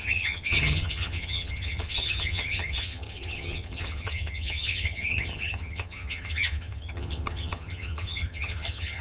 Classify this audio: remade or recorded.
remade